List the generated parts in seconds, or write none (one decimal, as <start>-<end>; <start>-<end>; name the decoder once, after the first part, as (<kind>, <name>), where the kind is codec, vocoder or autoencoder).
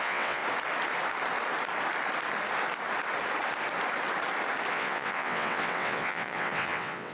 0.0-0.4 (vocoder, WaveNeXt); 4.7-7.1